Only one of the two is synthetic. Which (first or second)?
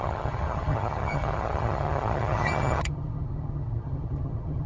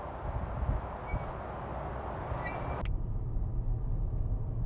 first